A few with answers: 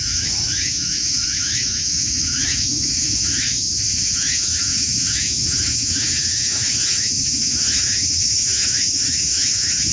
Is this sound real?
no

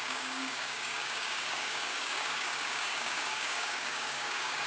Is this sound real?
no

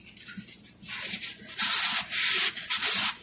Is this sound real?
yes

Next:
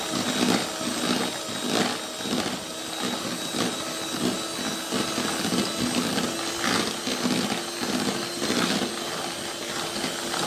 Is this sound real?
yes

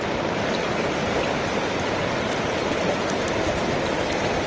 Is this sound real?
yes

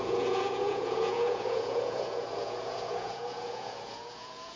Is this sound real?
no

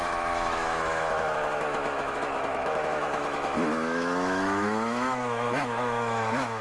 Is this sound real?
no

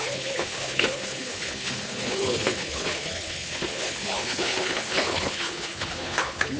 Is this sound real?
no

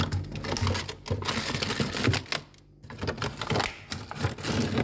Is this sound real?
yes